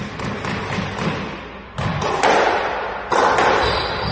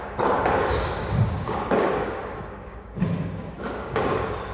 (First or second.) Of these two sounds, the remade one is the second